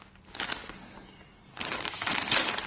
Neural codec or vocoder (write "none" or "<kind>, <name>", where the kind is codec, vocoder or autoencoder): none